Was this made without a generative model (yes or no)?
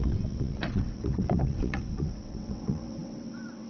no